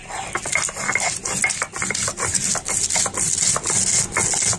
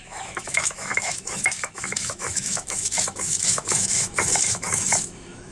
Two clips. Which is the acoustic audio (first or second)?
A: first